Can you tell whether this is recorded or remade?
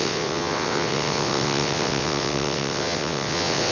remade